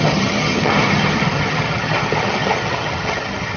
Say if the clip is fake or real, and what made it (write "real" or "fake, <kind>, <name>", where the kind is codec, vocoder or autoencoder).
fake, vocoder, HiFi-GAN